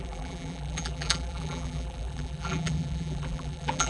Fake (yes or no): yes